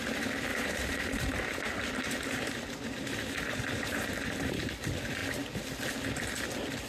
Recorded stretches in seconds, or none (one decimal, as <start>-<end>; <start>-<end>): 0.0-0.5; 4.6-6.9